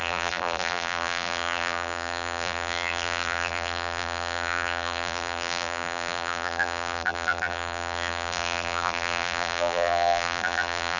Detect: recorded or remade remade